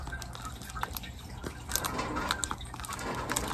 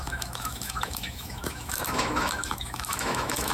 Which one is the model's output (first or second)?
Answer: second